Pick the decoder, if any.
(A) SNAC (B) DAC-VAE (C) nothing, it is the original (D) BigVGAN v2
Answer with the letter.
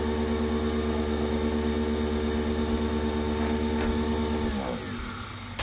C